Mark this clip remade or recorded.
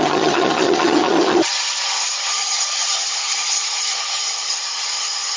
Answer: remade